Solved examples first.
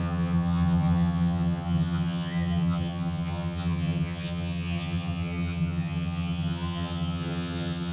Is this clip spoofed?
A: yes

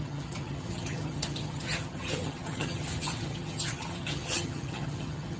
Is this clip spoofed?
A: yes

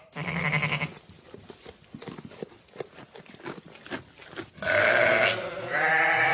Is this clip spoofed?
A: no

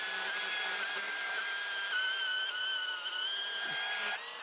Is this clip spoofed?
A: no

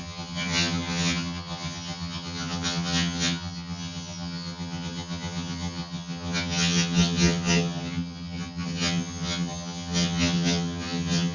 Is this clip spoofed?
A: yes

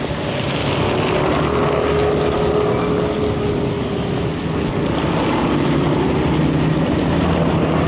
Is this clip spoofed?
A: no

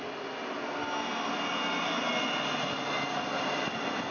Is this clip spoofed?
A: no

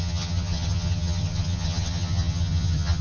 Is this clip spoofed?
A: yes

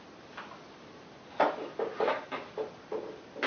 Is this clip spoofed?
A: no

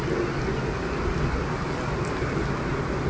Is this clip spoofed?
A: no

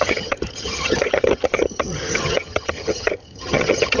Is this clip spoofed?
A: yes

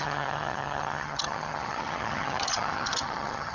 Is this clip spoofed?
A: yes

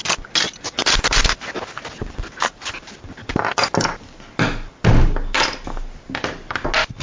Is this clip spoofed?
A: no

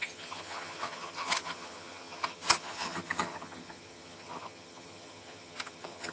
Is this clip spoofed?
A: yes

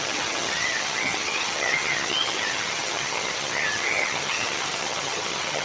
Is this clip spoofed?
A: yes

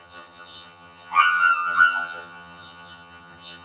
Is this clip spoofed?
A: yes